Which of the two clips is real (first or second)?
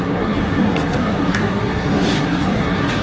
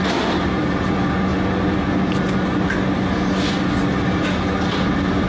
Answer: second